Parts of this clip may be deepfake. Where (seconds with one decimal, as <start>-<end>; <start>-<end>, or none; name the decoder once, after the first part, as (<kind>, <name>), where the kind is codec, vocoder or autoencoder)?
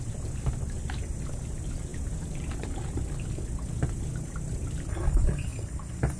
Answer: none